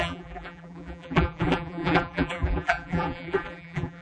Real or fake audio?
fake